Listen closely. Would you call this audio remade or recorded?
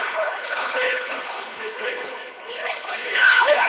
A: remade